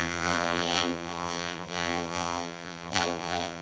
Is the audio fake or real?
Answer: fake